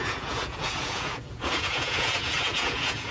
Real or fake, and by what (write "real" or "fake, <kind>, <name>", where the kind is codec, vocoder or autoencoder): fake, vocoder, Vocos